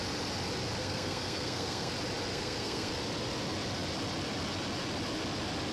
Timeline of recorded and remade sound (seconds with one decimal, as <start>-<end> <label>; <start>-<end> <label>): 0.0-0.8 recorded; 0.8-1.9 remade; 1.9-2.3 recorded; 2.3-2.9 remade; 2.9-5.7 recorded